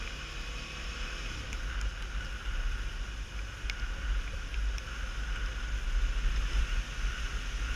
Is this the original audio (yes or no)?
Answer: yes